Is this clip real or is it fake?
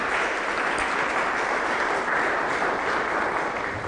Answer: real